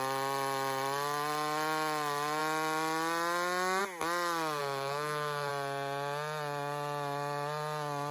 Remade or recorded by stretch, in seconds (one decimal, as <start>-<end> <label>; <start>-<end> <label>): 0.0-4.6 recorded; 4.6-5.5 remade; 5.5-8.1 recorded